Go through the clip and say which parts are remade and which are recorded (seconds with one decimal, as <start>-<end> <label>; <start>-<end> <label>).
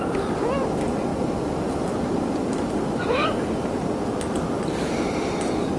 0.0-1.1 remade; 1.1-4.6 recorded; 4.6-5.8 remade